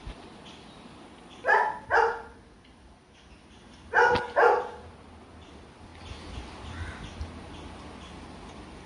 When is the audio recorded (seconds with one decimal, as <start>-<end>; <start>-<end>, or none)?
0.0-8.9